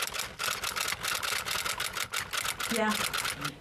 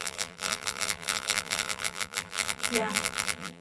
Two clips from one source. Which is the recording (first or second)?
first